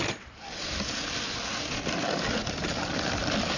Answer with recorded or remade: recorded